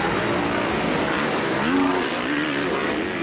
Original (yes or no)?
yes